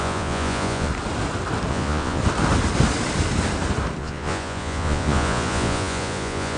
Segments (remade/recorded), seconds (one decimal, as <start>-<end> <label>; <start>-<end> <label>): 0.0-0.9 remade; 0.9-1.7 recorded; 1.7-2.2 remade; 2.2-4.0 recorded; 4.0-6.6 remade